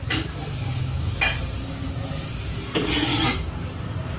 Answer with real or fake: real